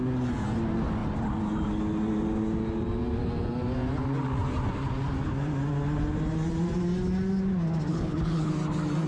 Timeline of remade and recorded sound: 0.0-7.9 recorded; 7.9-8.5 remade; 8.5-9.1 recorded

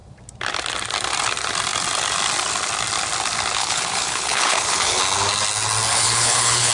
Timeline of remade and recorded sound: 0.0-3.6 recorded; 3.6-5.0 remade; 5.0-5.9 recorded; 5.9-6.7 remade

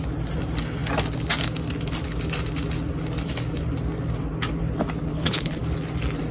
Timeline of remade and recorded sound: 0.0-5.1 recorded; 5.1-5.6 remade; 5.6-6.3 recorded

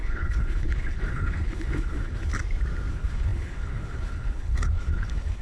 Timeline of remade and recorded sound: 0.0-2.3 remade; 2.3-2.9 recorded; 2.9-5.4 remade